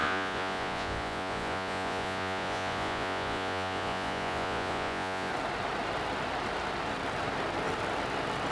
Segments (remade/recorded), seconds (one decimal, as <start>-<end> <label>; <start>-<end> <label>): 0.0-5.3 remade; 5.3-8.5 recorded